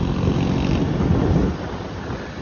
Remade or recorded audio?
remade